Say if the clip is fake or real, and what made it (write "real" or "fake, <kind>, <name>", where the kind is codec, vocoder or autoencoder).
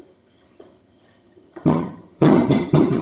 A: fake, vocoder, HiFi-GAN